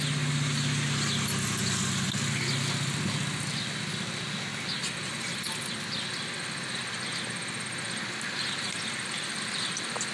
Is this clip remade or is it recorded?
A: recorded